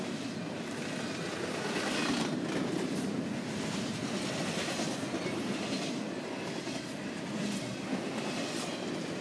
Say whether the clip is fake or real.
real